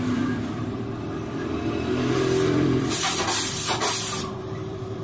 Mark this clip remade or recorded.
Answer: remade